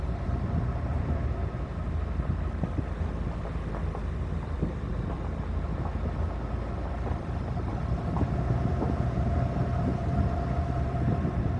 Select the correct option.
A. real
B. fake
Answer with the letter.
B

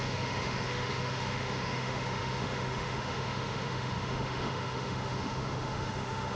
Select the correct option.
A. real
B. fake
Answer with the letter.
B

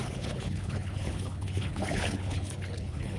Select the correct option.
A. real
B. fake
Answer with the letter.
B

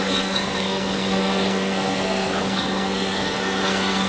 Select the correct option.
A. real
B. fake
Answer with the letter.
B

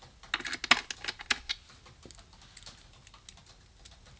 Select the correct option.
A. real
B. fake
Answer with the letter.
A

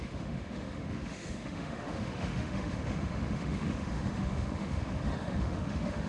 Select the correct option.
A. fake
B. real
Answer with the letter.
A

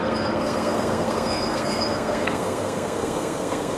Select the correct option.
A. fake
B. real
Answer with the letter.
A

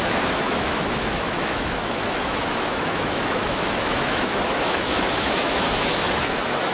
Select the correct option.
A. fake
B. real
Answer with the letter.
A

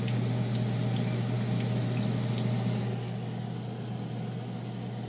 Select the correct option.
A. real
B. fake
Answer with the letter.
A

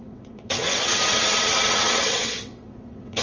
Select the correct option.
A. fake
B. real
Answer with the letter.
A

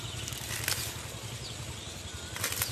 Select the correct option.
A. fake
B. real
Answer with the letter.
B